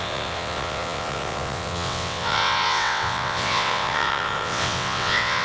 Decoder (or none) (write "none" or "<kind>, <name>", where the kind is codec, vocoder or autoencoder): vocoder, WaveNeXt